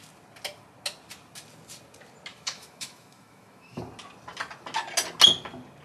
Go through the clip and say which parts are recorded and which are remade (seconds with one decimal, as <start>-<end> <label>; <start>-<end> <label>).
0.0-2.3 recorded; 2.3-3.8 remade; 3.8-5.8 recorded